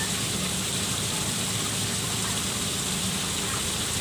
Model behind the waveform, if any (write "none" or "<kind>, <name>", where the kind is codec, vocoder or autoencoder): none